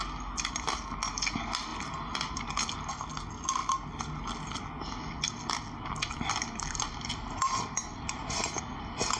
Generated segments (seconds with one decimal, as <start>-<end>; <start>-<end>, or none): none